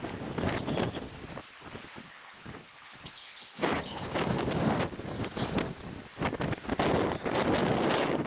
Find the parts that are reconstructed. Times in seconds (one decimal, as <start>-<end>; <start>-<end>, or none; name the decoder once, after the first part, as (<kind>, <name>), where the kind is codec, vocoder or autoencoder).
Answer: 2.0-4.1 (codec, HILCodec)